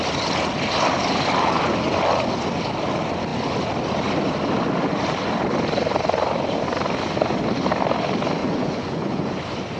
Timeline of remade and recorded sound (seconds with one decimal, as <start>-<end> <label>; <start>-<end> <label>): 0.0-8.4 recorded; 8.4-9.4 remade; 9.4-9.8 recorded